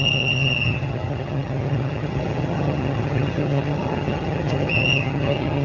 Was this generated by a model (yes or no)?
yes